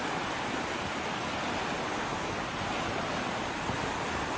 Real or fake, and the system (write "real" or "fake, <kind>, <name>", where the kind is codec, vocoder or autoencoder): real